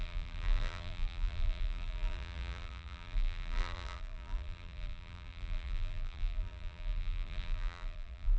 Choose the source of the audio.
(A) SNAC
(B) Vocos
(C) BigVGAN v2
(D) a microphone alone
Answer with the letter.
C